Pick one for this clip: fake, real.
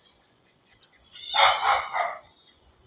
fake